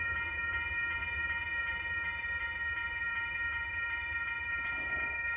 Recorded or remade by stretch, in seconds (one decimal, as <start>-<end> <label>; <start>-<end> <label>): 0.0-5.4 remade